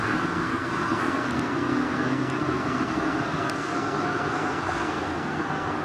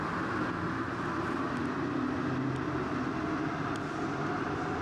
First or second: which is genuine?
second